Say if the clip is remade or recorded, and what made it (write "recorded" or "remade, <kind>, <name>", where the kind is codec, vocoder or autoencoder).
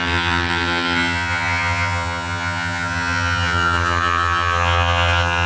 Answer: remade, vocoder, HiFi-GAN